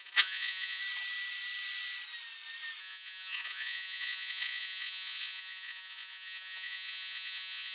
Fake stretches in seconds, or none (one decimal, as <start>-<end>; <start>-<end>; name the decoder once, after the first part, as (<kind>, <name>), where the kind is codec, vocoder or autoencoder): 0.0-0.8 (vocoder, Vocos); 2.8-7.7